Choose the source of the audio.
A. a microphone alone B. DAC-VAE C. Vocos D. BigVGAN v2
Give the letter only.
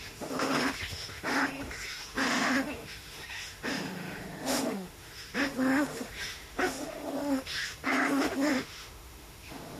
B